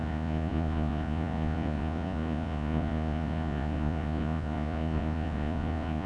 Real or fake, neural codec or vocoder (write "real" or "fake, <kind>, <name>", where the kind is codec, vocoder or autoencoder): fake, vocoder, Vocos